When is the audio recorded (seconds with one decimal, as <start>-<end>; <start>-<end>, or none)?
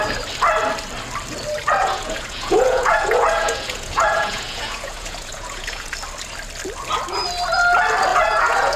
0.0-1.8; 5.9-8.1